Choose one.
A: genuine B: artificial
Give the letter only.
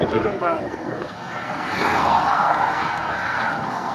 B